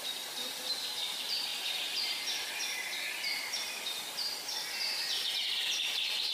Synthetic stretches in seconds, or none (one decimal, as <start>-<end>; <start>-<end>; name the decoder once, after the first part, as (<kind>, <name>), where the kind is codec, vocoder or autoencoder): none